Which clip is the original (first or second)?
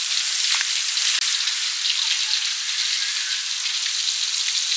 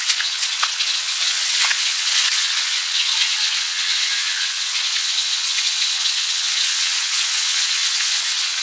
first